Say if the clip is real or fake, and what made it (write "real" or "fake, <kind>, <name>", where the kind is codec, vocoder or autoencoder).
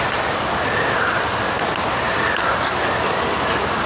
real